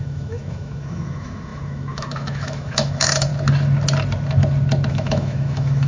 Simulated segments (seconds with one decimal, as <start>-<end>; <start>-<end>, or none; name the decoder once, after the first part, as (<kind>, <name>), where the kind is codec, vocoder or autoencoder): 0.0-3.3 (autoencoder, DAC-VAE); 4.9-5.9